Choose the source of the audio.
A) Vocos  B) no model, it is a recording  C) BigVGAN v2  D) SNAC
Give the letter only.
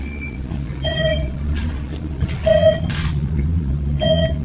A